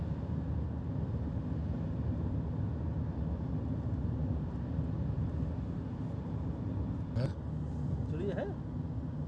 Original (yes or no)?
yes